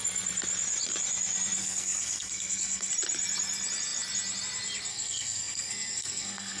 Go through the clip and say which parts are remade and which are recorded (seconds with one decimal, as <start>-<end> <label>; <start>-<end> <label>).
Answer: 0.0-1.6 recorded; 1.6-2.9 remade; 2.9-4.9 recorded; 4.9-6.6 remade